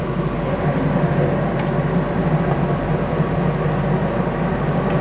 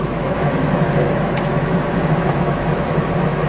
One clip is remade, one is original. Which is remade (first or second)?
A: second